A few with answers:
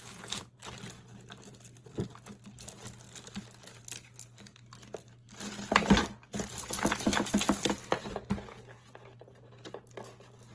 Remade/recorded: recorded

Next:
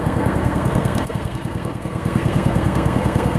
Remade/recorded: remade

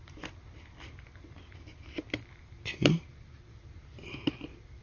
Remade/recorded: recorded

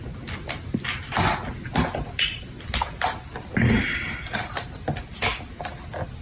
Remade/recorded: recorded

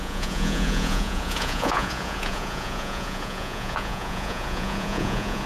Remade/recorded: remade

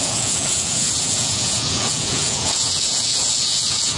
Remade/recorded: remade